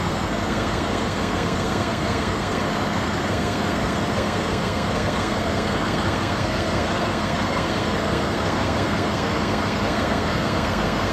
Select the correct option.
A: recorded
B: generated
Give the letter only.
B